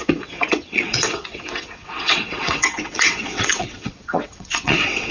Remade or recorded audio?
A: remade